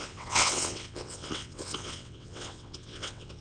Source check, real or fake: fake